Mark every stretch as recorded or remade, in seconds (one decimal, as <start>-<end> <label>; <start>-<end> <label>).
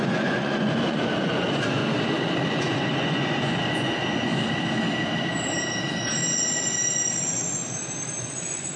0.0-1.8 remade; 1.8-2.5 recorded; 2.5-4.3 remade; 4.3-7.1 recorded; 7.1-7.6 remade; 7.6-8.2 recorded; 8.2-8.8 remade